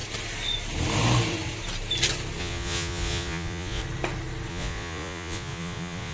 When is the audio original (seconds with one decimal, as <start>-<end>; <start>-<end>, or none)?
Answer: 0.0-2.4; 3.8-4.5